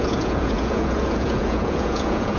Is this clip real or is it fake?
fake